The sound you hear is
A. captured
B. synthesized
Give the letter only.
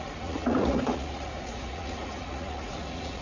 B